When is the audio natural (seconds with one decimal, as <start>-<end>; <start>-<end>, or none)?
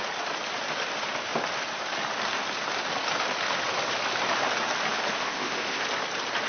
0.0-5.2; 5.8-6.5